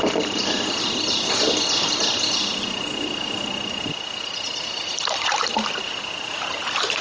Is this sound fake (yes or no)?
no